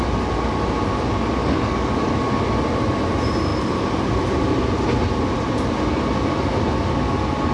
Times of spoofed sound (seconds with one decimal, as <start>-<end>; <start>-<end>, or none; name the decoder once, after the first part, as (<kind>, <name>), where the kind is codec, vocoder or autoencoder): 1.4-2.1 (codec, DAC)